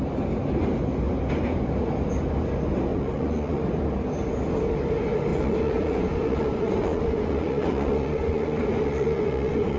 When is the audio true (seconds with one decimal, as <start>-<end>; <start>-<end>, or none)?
0.0-2.9; 3.6-5.3